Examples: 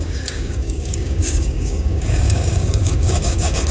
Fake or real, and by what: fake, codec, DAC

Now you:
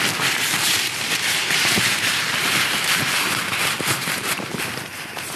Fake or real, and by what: fake, vocoder, BigVGAN v2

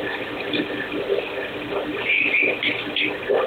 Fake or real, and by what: real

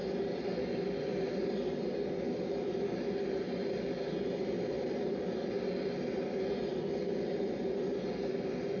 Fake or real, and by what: real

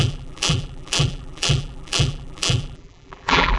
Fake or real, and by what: fake, vocoder, BigVGAN v2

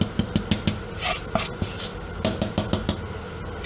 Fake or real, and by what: real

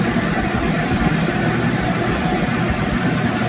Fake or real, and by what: real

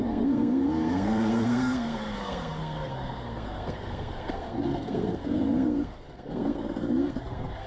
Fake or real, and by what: fake, codec, SNAC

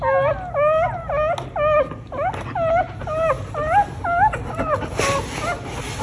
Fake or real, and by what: real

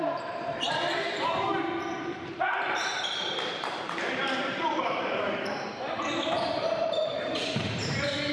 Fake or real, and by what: fake, vocoder, BigVGAN v2